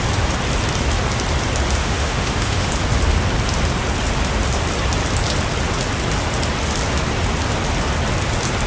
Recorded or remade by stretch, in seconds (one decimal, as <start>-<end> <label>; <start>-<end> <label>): 0.0-1.8 recorded; 1.8-2.7 remade; 2.7-8.7 recorded